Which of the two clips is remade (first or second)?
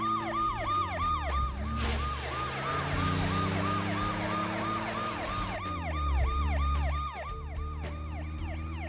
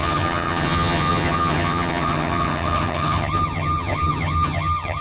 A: second